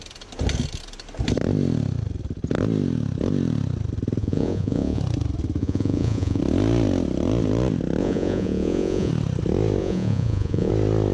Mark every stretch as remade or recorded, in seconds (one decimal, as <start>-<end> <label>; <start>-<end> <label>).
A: 0.0-4.2 recorded; 4.2-5.0 remade; 5.0-5.6 recorded; 5.6-6.4 remade; 6.4-8.0 recorded; 8.0-9.1 remade; 9.1-9.8 recorded; 9.8-10.7 remade; 10.7-11.1 recorded